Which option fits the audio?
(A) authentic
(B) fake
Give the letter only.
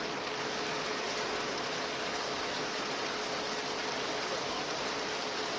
A